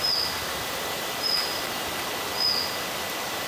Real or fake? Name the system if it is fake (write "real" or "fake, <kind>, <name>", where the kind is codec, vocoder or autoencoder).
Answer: real